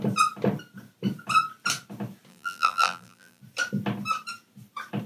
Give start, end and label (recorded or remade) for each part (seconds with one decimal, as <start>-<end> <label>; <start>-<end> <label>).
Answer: 0.0-2.3 recorded; 2.3-3.4 remade; 3.4-5.1 recorded